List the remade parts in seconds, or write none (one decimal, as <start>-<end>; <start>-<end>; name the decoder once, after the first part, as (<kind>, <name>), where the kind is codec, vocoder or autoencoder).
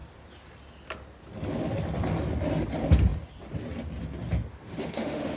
4.5-5.4 (autoencoder, DAC-VAE)